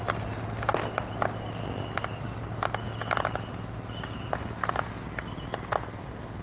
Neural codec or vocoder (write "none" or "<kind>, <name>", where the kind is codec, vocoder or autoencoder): none